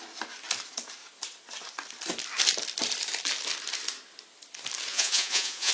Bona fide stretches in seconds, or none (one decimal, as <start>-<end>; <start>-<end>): 0.0-4.9